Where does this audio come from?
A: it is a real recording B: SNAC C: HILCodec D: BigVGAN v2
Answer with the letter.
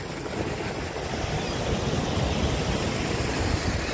A